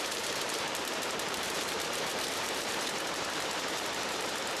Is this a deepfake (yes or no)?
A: yes